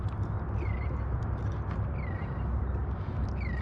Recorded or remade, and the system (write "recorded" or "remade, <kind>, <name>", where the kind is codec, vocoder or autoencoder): recorded